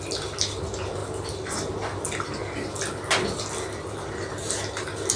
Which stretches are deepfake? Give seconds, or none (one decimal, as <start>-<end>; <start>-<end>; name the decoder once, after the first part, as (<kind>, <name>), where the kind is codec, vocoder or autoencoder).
none